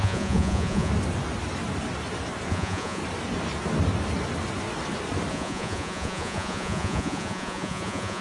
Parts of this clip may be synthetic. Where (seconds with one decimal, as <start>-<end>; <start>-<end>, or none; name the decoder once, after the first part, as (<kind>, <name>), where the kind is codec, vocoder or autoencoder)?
0.0-0.9 (vocoder, Vocos); 2.5-3.0; 5.3-8.2